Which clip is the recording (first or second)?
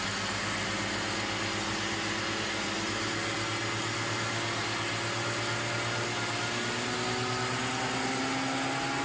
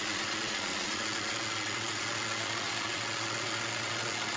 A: first